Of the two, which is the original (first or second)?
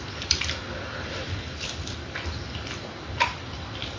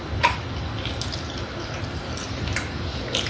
second